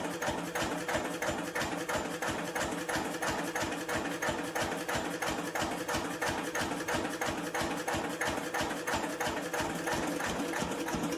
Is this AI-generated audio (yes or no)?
no